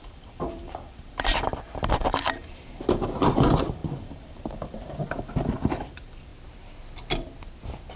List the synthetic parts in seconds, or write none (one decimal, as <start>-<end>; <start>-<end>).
0.0-6.3